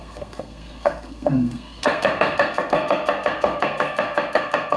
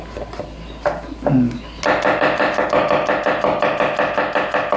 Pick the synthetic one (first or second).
first